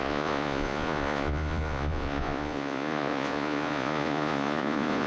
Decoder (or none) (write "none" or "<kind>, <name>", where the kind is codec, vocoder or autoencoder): vocoder, Vocos